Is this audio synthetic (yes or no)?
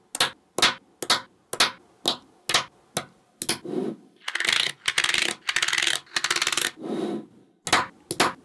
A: no